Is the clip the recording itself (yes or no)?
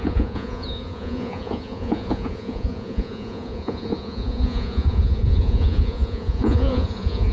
no